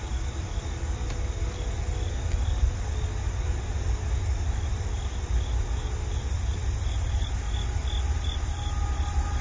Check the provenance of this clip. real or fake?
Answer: real